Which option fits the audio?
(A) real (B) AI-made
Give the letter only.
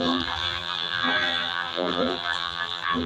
B